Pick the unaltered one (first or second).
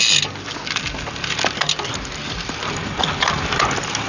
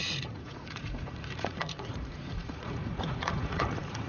first